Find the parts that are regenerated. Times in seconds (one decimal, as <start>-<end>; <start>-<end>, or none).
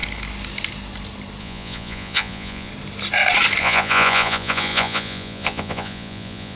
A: 1.4-2.7; 3.6-6.6